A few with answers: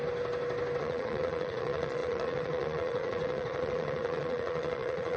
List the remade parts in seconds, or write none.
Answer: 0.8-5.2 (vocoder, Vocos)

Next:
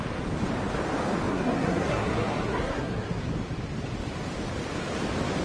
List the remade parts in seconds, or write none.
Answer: 1.3-3.2 (codec, SNAC)

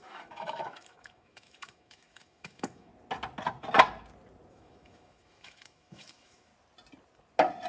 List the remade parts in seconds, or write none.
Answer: 0.0-2.9 (autoencoder, DAC-VAE); 4.5-6.5

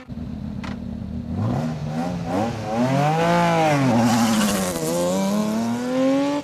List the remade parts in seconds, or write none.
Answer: none